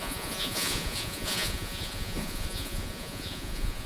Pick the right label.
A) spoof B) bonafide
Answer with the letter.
A